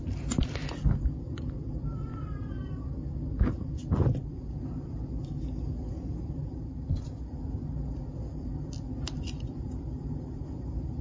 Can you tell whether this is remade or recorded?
recorded